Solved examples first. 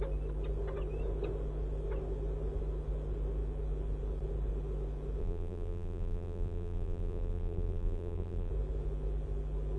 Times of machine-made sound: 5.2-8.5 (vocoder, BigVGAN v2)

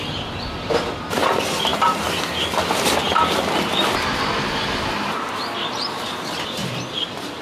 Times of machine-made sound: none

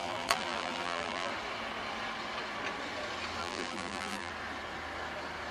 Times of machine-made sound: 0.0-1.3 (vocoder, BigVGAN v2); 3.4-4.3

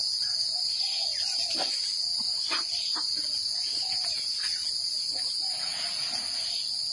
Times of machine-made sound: 0.0-1.7 (vocoder, BigVGAN v2); 2.1-6.2

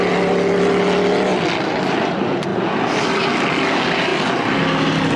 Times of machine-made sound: 1.3-2.1 (vocoder, BigVGAN v2); 4.1-4.6

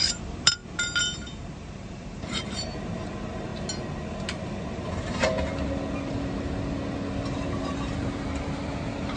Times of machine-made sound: 0.0-3.5 (vocoder, BigVGAN v2); 4.7-5.3; 7.6-9.2

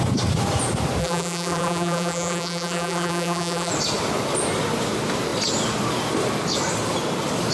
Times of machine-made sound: 1.0-3.7 (vocoder, BigVGAN v2)